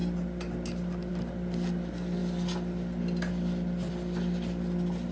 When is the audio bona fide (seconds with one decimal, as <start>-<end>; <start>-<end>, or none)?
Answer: 0.0-5.1